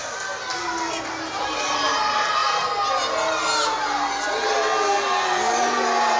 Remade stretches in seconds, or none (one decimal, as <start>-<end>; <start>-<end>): none